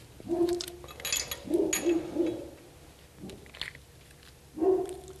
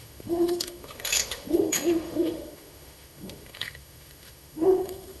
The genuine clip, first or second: first